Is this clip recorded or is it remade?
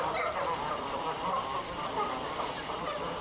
recorded